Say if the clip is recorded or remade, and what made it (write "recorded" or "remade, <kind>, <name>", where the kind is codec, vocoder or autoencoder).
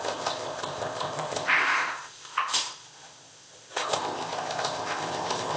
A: remade, codec, ZipCodec